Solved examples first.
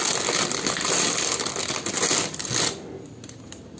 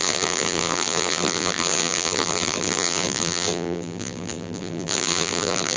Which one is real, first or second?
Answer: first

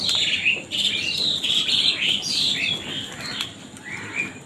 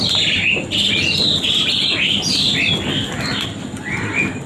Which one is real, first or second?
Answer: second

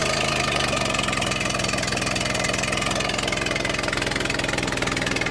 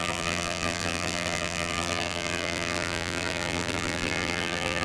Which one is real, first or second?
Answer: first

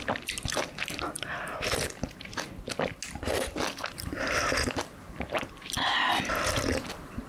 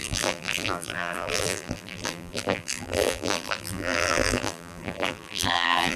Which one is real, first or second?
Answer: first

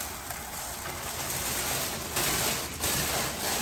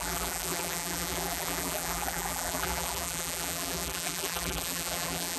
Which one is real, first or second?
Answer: first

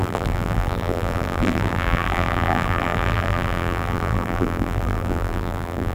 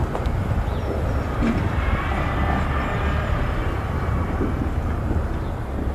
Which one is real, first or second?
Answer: second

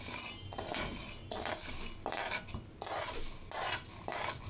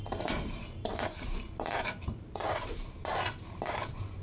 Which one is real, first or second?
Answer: first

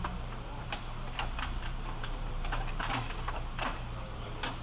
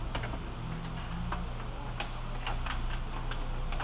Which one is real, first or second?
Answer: second